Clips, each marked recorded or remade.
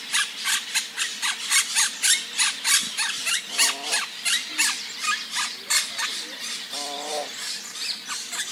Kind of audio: recorded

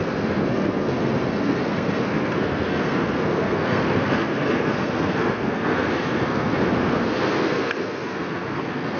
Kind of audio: remade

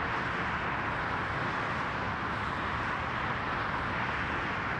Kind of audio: recorded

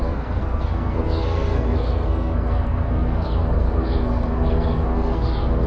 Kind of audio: remade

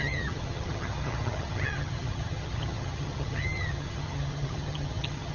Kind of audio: remade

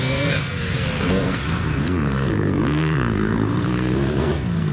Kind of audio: remade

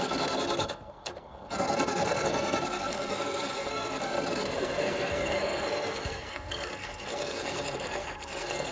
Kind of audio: remade